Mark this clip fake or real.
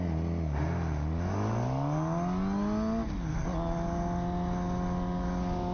real